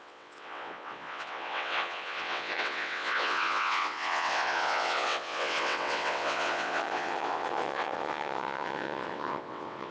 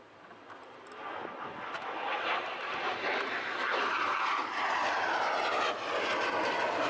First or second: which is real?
second